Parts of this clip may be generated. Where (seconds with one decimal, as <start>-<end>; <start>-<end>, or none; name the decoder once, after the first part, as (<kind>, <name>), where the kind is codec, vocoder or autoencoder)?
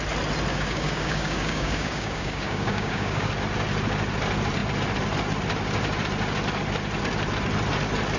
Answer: 0.5-3.3 (codec, DAC)